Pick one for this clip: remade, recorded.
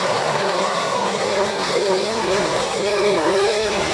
remade